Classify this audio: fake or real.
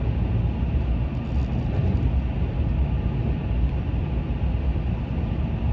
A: real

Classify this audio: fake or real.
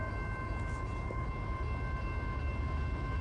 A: real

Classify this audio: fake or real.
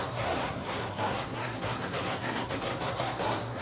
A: fake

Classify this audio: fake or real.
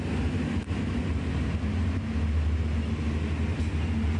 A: real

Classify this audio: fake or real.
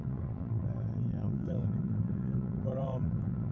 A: fake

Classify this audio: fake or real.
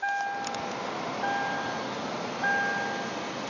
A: real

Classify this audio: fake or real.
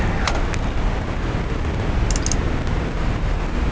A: real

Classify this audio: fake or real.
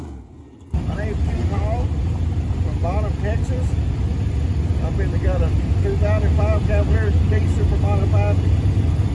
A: real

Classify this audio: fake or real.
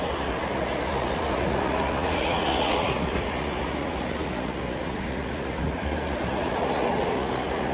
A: fake